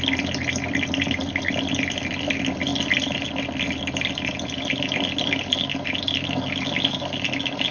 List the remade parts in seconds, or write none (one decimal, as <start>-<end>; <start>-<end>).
none